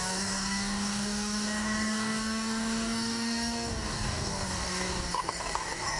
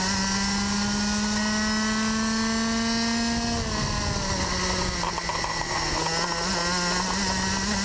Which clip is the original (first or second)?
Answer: second